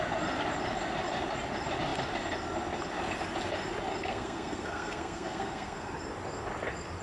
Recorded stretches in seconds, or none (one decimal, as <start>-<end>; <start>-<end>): 0.0-4.0; 5.9-7.0